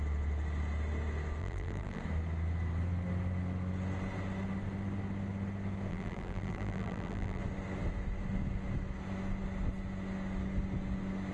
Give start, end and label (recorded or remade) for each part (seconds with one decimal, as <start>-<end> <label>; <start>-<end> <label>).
0.0-1.4 recorded; 1.4-2.0 remade; 2.0-5.9 recorded; 5.9-7.4 remade; 7.4-11.3 recorded